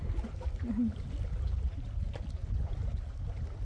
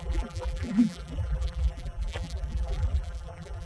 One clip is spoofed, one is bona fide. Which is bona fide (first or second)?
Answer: first